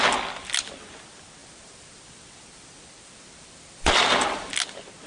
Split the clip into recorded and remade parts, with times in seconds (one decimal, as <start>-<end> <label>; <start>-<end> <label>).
0.0-1.4 recorded; 1.4-4.5 remade; 4.5-5.1 recorded